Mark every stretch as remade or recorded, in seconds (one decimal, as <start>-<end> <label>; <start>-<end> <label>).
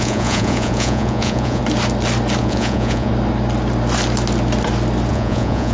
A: 0.0-1.6 remade; 1.6-2.4 recorded; 2.4-3.1 remade; 3.1-5.1 recorded; 5.1-5.7 remade